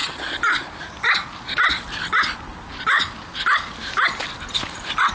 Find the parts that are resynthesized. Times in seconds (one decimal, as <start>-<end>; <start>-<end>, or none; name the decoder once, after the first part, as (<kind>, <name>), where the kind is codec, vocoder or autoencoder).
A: 0.0-2.0 (vocoder, BigVGAN v2); 2.7-5.1